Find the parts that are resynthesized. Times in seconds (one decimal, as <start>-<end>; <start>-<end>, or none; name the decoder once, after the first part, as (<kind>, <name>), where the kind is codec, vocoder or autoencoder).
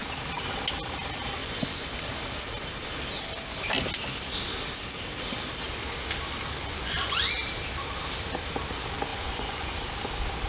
1.4-1.9 (vocoder, Vocos); 6.6-7.3; 9.1-9.7